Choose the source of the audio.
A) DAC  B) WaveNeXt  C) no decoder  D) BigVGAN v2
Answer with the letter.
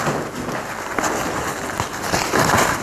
C